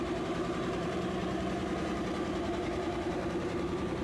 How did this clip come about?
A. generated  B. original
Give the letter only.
A